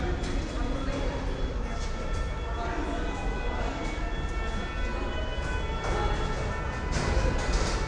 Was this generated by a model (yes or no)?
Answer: no